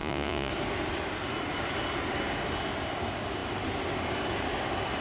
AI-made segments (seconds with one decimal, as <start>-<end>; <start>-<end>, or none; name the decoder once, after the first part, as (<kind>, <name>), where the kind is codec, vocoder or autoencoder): 0.0-0.5 (vocoder, Vocos)